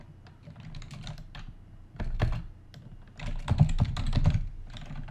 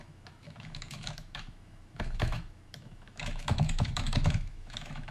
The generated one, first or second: second